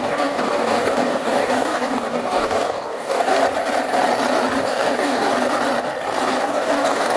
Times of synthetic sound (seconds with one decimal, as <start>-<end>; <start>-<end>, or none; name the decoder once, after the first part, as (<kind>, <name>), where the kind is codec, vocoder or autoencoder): 0.0-3.4 (codec, DAC); 4.6-5.3; 6.4-7.2

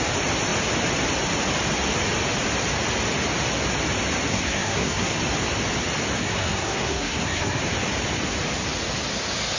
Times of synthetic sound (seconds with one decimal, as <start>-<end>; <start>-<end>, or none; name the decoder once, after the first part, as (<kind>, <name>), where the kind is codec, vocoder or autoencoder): 4.3-5.2 (codec, SNAC); 6.2-7.6

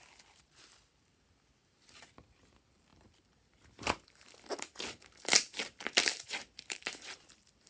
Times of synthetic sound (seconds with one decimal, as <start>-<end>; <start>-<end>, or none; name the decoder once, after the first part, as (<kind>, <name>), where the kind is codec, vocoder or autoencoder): 2.9-7.7 (vocoder, BigVGAN v2)